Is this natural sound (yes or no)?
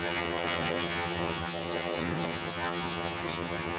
no